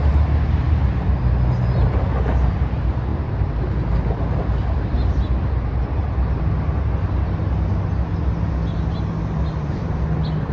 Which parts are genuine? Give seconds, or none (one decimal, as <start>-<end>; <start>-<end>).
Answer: 0.0-3.1; 3.7-10.5